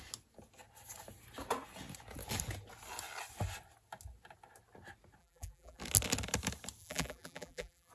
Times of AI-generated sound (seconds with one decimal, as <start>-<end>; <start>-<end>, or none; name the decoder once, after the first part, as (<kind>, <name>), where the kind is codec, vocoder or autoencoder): 5.2-5.8 (vocoder, BigVGAN v2); 6.8-7.9